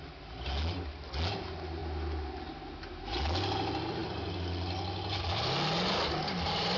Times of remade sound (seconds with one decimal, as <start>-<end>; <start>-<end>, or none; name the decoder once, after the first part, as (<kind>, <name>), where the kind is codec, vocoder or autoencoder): none